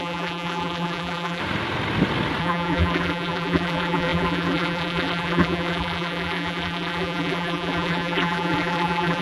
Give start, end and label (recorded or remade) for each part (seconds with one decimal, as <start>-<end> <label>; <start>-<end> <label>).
0.0-1.4 remade; 1.4-2.4 recorded; 2.4-9.2 remade